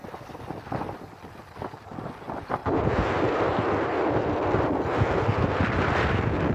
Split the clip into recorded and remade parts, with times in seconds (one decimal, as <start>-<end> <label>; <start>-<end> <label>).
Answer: 0.0-1.4 remade; 1.4-2.6 recorded; 2.6-6.5 remade